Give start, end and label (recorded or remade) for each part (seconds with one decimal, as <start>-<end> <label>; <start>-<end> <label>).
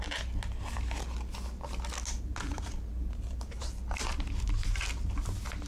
0.0-2.3 recorded; 2.3-4.9 remade; 4.9-5.7 recorded